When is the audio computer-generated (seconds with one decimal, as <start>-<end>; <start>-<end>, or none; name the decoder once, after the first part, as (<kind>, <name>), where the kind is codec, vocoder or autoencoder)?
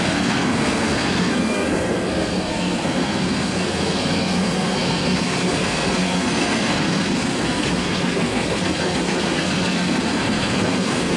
0.0-11.2 (codec, SNAC)